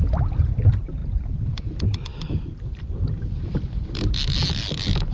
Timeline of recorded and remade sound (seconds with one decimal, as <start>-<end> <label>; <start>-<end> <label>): 0.0-5.1 recorded